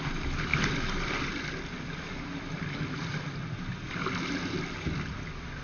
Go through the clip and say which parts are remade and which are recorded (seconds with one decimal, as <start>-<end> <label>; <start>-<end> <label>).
0.0-5.6 recorded